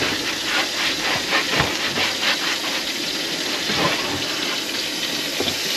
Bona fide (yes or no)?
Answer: yes